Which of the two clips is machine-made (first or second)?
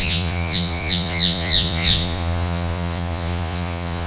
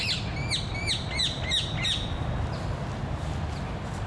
first